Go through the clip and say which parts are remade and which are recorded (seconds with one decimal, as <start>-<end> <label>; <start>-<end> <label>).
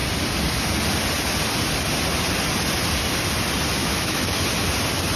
0.0-3.8 recorded; 3.8-4.4 remade; 4.4-5.2 recorded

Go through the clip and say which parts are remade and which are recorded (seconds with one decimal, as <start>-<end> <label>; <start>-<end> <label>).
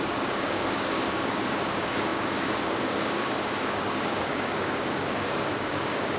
0.0-6.2 remade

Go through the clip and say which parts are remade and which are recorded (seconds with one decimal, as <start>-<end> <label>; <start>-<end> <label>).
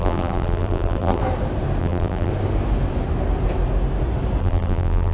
0.0-1.2 remade; 1.2-1.8 recorded; 1.8-2.3 remade; 2.3-4.4 recorded; 4.4-5.1 remade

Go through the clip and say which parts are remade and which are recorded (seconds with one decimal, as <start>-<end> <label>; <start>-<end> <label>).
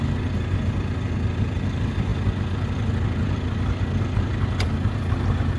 0.0-5.6 recorded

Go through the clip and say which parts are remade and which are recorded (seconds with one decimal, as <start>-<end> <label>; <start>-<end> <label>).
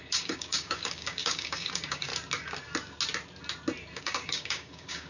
0.0-2.1 remade; 2.1-4.0 recorded; 4.0-5.1 remade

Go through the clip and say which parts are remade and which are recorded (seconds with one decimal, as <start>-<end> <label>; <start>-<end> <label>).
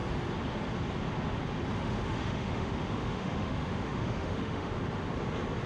0.0-1.8 recorded; 1.8-4.7 remade; 4.7-5.7 recorded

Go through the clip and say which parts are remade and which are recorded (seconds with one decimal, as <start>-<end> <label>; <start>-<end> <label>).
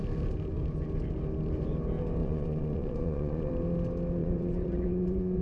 0.0-2.2 recorded; 2.2-3.5 remade; 3.5-4.2 recorded; 4.2-5.4 remade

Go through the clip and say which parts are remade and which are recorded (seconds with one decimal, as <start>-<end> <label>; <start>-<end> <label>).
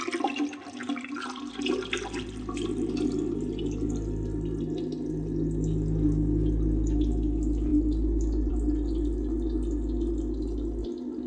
0.0-11.3 recorded